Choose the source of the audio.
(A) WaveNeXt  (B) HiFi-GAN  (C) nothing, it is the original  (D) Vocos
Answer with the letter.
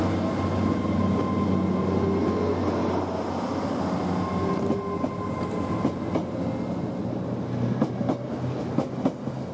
C